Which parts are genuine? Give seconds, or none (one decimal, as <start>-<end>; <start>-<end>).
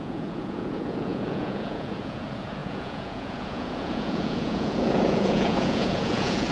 none